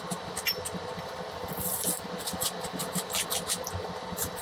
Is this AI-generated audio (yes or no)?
yes